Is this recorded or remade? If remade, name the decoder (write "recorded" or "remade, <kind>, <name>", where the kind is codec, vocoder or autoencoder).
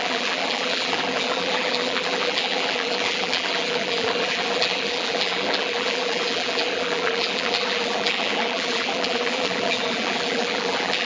remade, vocoder, BigVGAN v2